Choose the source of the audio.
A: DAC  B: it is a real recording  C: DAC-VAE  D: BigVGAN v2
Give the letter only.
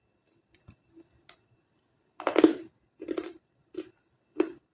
D